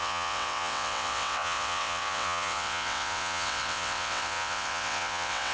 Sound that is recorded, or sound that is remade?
remade